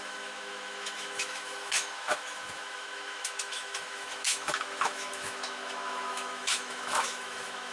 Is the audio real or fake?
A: fake